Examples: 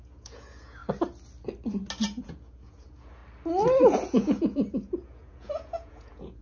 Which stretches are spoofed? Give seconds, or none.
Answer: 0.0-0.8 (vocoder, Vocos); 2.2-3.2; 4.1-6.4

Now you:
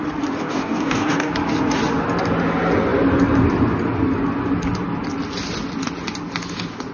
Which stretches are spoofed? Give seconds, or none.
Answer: 0.4-1.3 (codec, DAC)

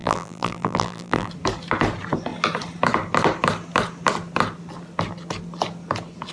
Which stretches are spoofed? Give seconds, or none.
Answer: 0.0-1.3 (vocoder, BigVGAN v2)

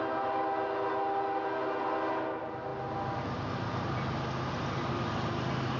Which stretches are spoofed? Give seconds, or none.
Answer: none

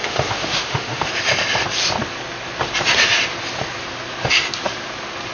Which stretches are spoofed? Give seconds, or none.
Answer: 0.0-1.1 (autoencoder, DAC-VAE)

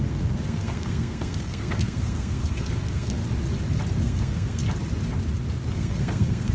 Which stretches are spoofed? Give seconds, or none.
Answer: 0.0-3.2 (codec, SNAC); 4.0-4.6; 5.7-6.5

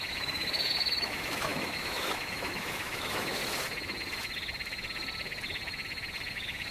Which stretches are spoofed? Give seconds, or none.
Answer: 0.0-3.4 (autoencoder, DAC-VAE); 6.3-6.7